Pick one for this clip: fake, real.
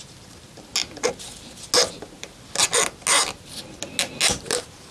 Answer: real